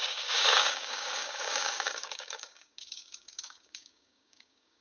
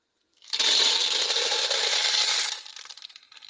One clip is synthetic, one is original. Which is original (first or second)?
second